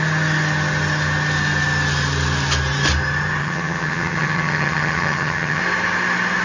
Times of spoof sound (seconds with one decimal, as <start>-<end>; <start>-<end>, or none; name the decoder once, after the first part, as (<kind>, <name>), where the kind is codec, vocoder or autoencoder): 3.4-5.6 (vocoder, HiFi-GAN)